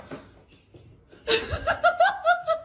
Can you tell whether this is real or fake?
real